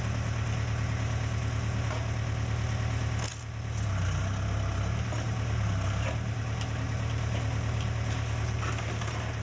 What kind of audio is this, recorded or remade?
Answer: recorded